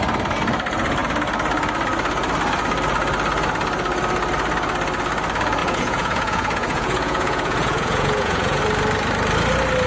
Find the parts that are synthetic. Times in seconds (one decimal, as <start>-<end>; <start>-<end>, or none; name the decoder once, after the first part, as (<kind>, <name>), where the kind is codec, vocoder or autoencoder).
5.6-8.6 (vocoder, Vocos)